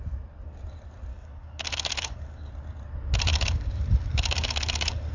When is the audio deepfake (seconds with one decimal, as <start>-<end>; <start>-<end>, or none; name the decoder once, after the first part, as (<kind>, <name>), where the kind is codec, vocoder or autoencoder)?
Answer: 1.1-2.5 (codec, DAC); 3.3-5.1